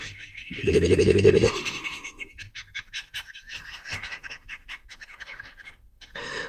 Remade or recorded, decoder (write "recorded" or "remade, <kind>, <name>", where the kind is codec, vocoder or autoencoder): remade, autoencoder, DAC-VAE